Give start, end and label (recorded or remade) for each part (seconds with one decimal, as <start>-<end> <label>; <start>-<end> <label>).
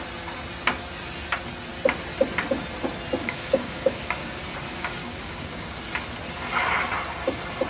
0.0-3.2 recorded; 3.2-4.4 remade; 4.4-5.0 recorded; 5.0-5.8 remade; 5.8-7.7 recorded